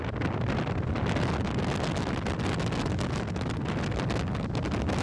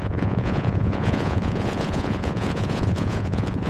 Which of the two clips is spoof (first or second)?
second